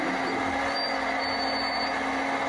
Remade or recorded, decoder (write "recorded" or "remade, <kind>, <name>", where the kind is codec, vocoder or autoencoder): recorded